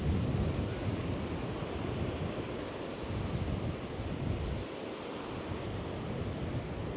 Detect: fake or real real